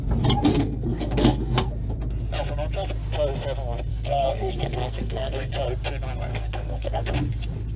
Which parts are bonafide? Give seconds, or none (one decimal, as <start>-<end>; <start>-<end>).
0.0-0.5; 1.7-3.9; 5.5-6.3; 7.1-7.8